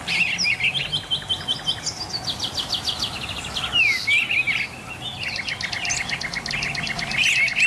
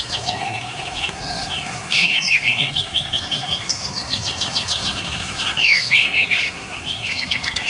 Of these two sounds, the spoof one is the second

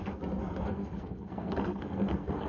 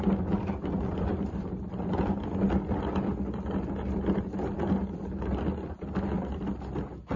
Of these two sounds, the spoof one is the first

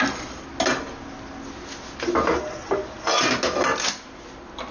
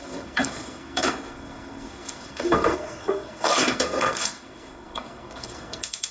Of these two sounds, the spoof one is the second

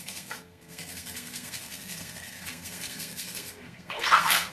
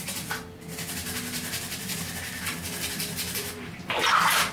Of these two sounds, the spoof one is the first